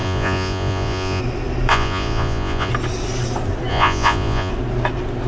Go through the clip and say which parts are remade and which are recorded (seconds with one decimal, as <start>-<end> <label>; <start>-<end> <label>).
0.0-1.2 remade; 1.2-1.7 recorded; 1.7-2.7 remade; 2.7-3.7 recorded; 3.7-4.5 remade; 4.5-5.3 recorded